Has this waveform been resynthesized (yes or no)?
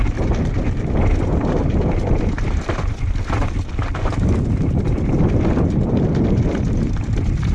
no